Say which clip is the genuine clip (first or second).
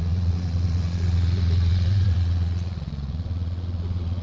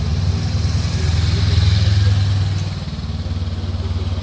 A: second